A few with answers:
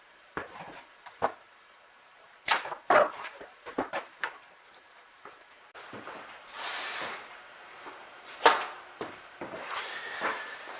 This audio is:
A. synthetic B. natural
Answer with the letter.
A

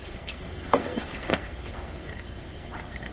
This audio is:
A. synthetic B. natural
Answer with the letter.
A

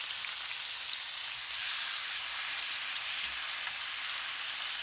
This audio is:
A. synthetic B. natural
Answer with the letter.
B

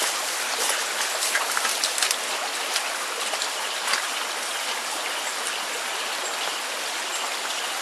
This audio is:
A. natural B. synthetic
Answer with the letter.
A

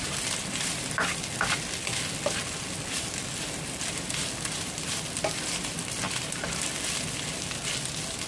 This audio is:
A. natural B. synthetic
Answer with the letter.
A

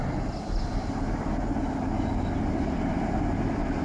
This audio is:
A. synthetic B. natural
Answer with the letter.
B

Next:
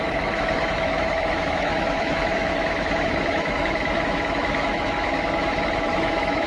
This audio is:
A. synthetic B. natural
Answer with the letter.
A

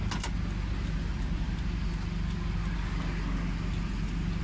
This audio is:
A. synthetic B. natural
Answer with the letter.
B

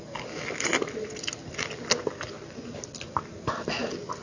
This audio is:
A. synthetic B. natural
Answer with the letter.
B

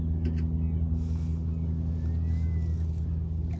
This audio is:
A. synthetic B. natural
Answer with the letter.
B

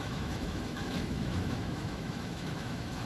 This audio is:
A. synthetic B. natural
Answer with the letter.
A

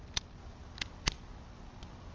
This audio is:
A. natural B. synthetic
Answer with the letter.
A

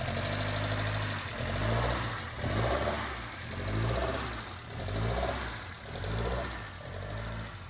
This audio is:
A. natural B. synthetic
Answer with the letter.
A